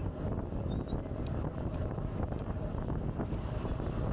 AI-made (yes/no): no